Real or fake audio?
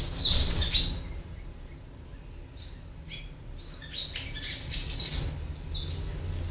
real